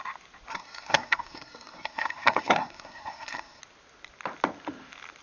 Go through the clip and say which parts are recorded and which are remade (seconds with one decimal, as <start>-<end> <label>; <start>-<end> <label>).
0.0-0.5 recorded; 0.5-3.6 remade; 3.6-5.2 recorded